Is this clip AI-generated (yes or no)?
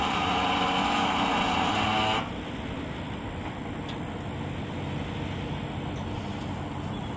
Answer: no